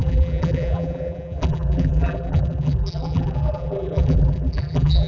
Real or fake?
fake